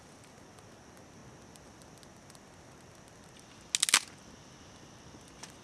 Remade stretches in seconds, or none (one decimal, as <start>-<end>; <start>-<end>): none